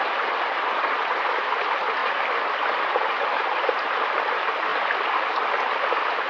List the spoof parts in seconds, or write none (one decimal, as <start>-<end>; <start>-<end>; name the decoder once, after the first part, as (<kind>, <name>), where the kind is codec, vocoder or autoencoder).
none